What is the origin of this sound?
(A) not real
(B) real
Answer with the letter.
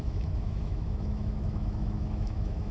A